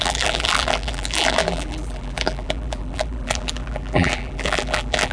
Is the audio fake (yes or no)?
yes